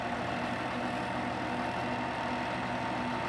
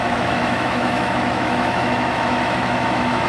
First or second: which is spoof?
second